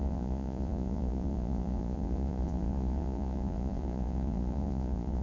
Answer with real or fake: fake